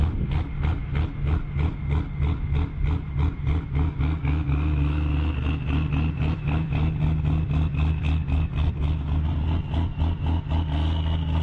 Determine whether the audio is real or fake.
real